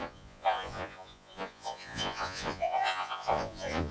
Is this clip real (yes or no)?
no